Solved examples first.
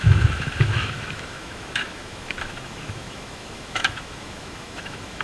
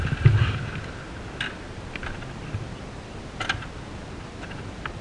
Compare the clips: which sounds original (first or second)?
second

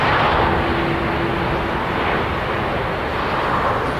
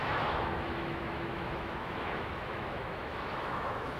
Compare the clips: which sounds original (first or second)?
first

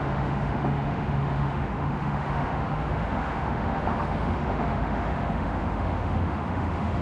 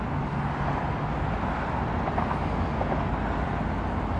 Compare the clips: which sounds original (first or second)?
second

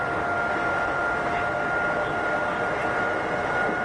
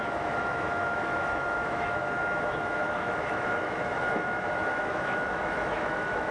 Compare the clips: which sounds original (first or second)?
first